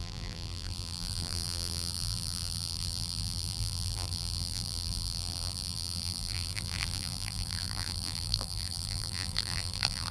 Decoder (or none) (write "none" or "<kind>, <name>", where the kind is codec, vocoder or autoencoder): vocoder, BigVGAN v2